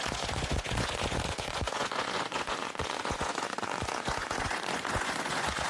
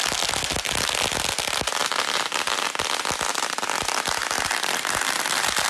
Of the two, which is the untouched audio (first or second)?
second